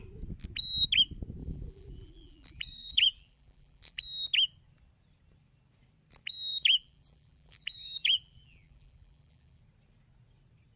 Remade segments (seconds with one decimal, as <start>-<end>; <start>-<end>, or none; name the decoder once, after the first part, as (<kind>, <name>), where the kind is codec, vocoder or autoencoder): 1.4-4.0 (vocoder, BigVGAN v2); 6.5-9.6